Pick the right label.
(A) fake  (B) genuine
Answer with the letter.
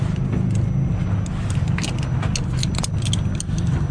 B